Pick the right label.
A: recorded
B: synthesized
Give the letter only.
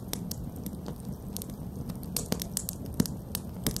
A